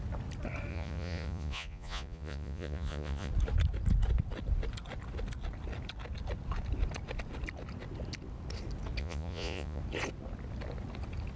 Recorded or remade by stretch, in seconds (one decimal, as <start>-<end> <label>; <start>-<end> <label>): 0.0-0.7 recorded; 0.7-3.3 remade; 3.3-9.0 recorded; 9.0-9.8 remade; 9.8-11.4 recorded